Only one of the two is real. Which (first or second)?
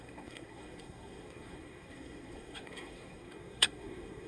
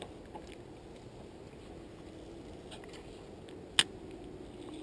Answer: second